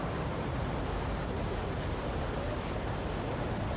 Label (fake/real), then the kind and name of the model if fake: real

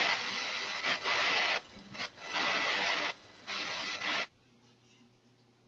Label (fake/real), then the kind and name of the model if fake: real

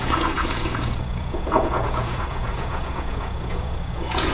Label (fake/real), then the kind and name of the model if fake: fake, vocoder, Vocos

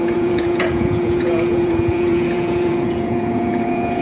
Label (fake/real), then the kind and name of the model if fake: fake, vocoder, Vocos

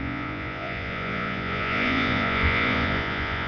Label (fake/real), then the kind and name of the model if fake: fake, vocoder, Vocos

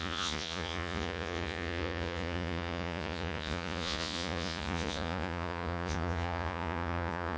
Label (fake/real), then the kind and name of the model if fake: fake, vocoder, Vocos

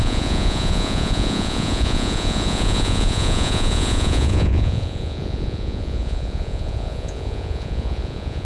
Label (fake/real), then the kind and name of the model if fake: fake, vocoder, Vocos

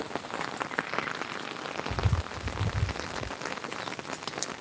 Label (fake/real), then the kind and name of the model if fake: real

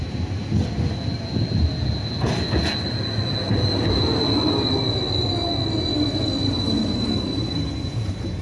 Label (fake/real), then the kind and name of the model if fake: real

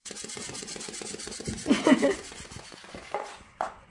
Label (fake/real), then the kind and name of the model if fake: fake, vocoder, Vocos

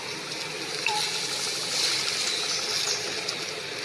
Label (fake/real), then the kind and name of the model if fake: real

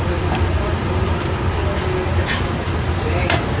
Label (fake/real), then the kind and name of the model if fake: real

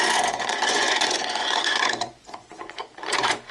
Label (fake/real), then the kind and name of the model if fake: fake, vocoder, Vocos